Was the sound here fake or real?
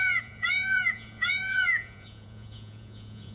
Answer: fake